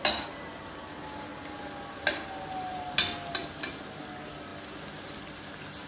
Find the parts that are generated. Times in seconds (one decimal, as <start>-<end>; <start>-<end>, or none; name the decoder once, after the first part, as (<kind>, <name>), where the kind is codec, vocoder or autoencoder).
none